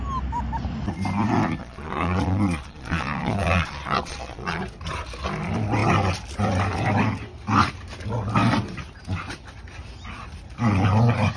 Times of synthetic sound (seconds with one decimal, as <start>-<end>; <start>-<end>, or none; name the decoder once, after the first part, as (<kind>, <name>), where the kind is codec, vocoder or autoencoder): 1.6-4.6 (vocoder, Vocos)